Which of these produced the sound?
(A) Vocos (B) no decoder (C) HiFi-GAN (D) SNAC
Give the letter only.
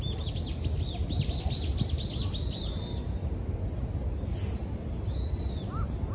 B